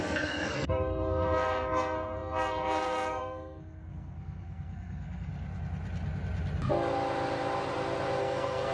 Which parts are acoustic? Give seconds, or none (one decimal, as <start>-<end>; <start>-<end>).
5.3-8.2